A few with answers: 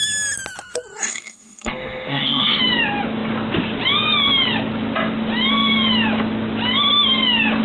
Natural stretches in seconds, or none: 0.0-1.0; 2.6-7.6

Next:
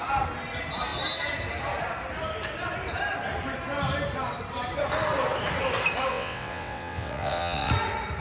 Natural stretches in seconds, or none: 0.0-6.1; 7.7-8.2

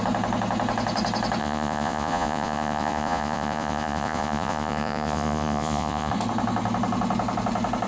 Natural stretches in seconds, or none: 0.0-1.4; 6.1-7.9